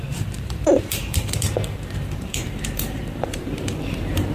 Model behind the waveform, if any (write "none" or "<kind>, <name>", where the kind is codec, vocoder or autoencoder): vocoder, BigVGAN v2